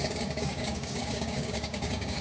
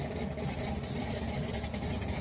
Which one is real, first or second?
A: second